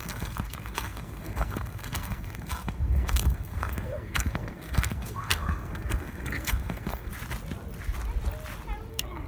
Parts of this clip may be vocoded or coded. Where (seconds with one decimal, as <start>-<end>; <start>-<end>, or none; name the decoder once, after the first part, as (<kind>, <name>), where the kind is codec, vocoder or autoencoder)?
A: 0.0-7.1 (codec, SNAC); 8.9-9.3